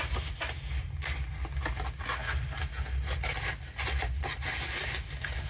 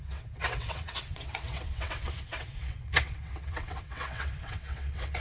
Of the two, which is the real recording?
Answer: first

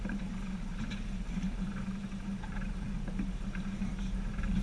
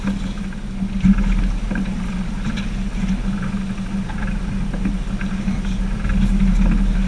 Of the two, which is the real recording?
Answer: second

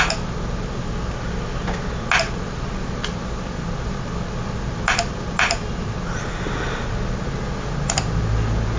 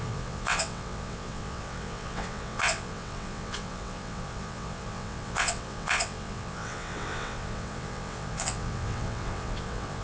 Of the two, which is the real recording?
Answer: first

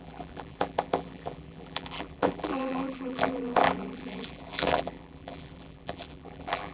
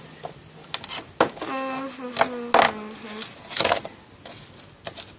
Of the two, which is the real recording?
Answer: second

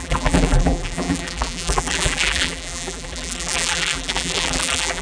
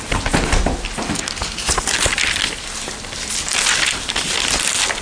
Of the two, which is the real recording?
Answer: second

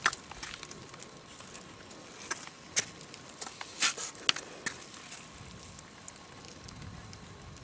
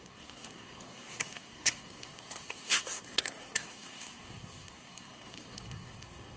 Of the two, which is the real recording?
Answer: first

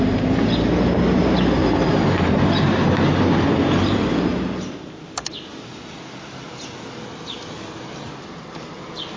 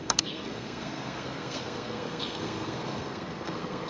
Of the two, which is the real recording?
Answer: first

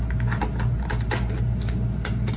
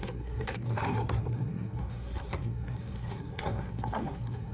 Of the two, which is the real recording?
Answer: first